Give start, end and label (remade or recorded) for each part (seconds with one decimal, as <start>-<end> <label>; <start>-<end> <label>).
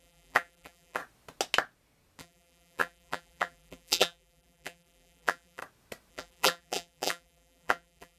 0.0-1.0 remade; 1.0-2.2 recorded; 2.2-5.6 remade; 5.6-6.1 recorded; 6.1-8.2 remade